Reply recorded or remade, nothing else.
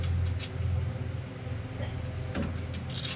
recorded